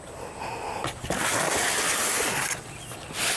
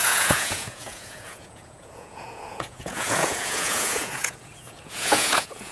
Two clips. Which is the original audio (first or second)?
first